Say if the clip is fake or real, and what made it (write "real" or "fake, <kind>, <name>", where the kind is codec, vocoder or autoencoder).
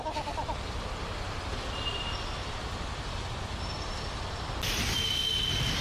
real